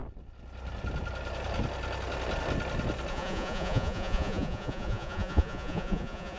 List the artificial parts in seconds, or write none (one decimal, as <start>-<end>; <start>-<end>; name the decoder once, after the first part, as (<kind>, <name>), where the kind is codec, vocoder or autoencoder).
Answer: 3.1-6.4 (vocoder, Vocos)